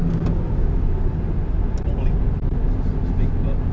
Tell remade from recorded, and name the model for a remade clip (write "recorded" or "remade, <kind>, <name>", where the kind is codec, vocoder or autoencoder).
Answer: recorded